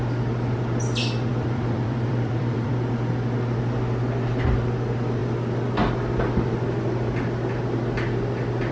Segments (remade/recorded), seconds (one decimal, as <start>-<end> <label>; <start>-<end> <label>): 0.0-1.3 recorded; 1.3-2.7 remade; 2.7-8.7 recorded